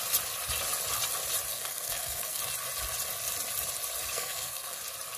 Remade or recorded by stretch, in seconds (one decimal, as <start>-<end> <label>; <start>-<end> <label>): 0.0-1.5 recorded; 1.5-2.4 remade; 2.4-4.0 recorded; 4.0-4.8 remade; 4.8-5.2 recorded